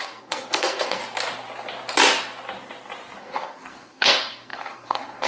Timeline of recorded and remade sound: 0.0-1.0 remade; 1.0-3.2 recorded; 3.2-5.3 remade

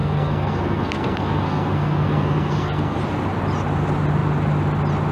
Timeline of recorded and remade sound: 0.0-3.0 remade; 3.0-5.1 recorded